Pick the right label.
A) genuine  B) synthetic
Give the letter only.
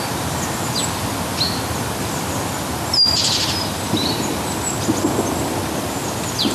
A